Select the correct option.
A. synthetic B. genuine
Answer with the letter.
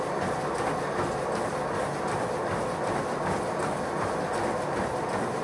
B